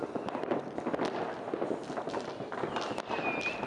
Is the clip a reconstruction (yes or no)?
no